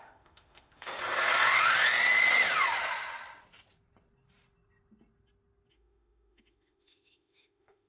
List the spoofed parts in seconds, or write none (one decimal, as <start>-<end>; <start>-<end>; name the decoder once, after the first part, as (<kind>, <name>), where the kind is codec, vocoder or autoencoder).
0.0-1.0 (autoencoder, DAC-VAE); 5.7-7.9